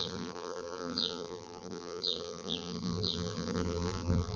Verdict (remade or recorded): remade